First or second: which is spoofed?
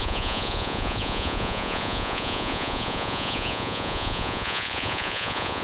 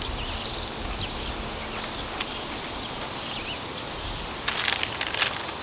first